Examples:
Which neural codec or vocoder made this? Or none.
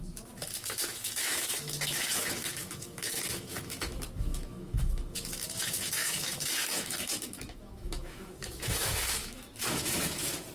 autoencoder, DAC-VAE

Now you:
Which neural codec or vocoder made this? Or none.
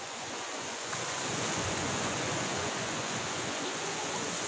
vocoder, Vocos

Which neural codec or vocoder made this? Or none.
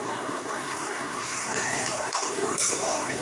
codec, SNAC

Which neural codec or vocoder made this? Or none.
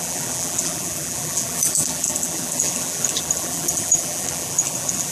vocoder, BigVGAN v2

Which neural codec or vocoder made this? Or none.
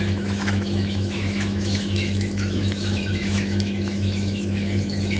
autoencoder, DAC-VAE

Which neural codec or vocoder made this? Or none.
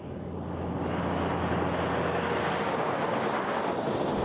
none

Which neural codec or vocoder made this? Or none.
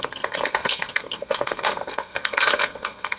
codec, SNAC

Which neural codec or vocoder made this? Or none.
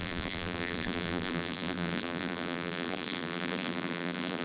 vocoder, BigVGAN v2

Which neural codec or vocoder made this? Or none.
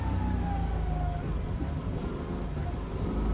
none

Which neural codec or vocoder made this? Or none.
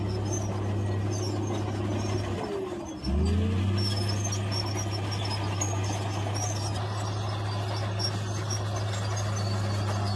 none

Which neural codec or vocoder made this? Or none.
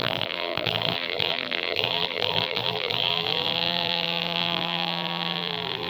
vocoder, BigVGAN v2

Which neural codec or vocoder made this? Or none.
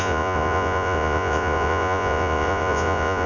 vocoder, Vocos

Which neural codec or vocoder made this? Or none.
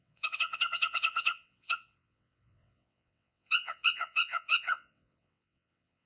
vocoder, WaveNeXt